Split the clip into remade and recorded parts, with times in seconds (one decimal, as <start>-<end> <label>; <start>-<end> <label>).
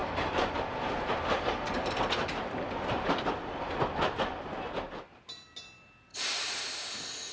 0.0-2.0 remade; 2.0-6.1 recorded; 6.1-6.7 remade; 6.7-7.3 recorded